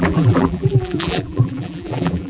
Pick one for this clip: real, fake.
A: fake